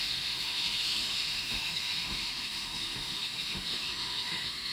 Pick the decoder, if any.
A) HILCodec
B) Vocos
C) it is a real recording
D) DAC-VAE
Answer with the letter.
D